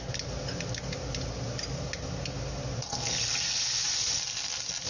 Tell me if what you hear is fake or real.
real